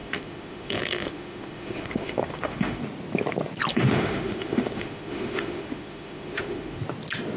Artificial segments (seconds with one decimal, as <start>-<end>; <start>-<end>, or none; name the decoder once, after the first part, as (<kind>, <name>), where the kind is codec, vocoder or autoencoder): 0.0-2.8 (autoencoder, DAC-VAE); 3.7-6.8